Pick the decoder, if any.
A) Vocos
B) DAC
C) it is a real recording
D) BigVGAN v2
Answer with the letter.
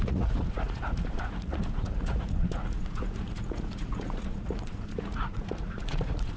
A